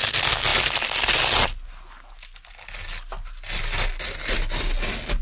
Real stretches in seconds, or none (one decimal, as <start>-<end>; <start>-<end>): 0.0-5.2